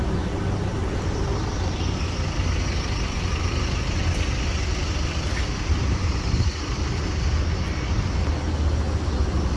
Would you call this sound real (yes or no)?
yes